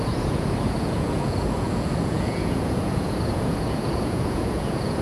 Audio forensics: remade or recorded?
remade